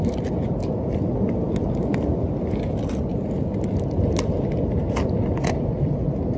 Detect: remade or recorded recorded